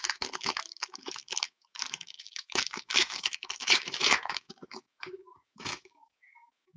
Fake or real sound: fake